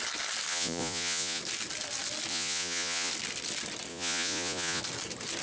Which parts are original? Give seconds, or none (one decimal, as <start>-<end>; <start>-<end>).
0.0-0.5; 1.4-2.3; 3.1-3.9; 4.8-5.4